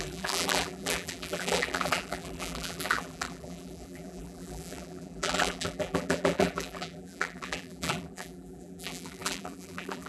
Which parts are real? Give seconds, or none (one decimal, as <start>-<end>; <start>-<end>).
none